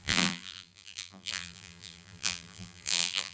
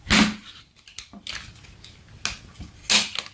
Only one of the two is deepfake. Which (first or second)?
first